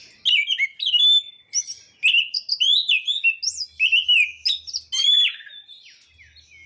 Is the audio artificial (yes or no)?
no